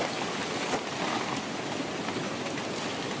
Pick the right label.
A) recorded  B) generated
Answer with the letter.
A